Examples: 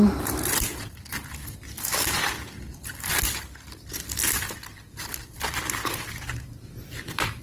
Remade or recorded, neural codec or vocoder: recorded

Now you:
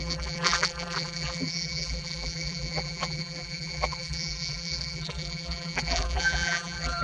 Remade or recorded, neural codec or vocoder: remade, vocoder, BigVGAN v2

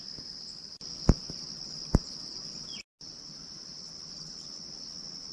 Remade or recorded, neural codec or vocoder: recorded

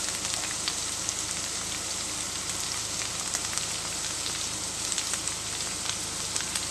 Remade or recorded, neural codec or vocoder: recorded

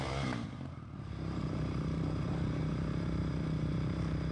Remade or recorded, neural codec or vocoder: remade, vocoder, BigVGAN v2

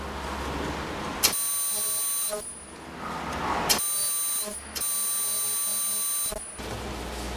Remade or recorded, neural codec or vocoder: recorded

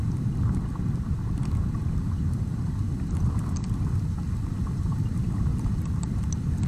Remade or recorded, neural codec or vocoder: recorded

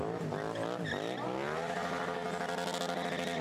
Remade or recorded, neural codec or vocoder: recorded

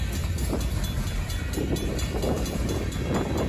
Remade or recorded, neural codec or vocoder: recorded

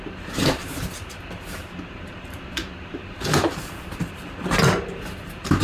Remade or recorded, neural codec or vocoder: remade, vocoder, BigVGAN v2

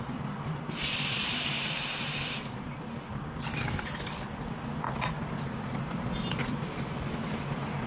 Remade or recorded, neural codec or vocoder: remade, vocoder, BigVGAN v2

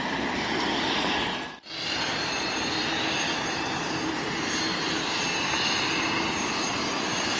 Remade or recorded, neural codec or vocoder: remade, vocoder, BigVGAN v2